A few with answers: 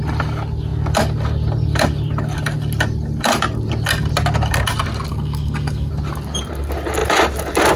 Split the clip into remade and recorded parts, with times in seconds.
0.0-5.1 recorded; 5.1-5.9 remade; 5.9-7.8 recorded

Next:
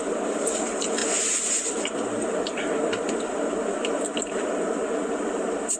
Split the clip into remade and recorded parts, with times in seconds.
0.0-5.8 recorded

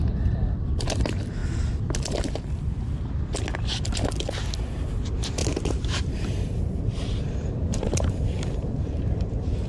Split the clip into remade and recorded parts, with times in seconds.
0.0-5.4 recorded; 5.4-9.7 remade

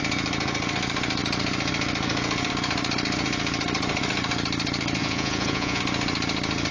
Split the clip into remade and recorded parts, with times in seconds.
0.0-5.0 recorded; 5.0-5.8 remade; 5.8-6.7 recorded

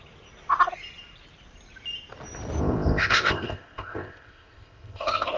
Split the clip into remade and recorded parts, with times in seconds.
0.0-2.6 recorded; 2.6-5.4 remade